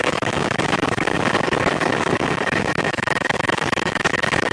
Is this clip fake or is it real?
fake